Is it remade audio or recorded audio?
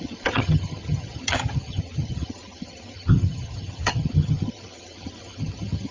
remade